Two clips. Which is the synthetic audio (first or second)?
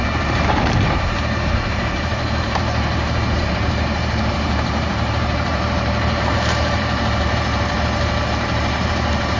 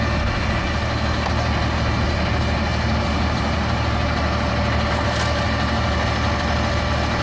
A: first